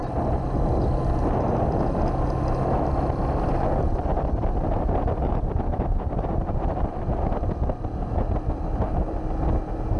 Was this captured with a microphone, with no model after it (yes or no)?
yes